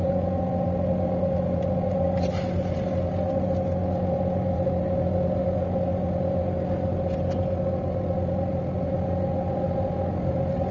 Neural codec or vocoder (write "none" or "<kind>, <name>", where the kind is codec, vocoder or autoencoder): none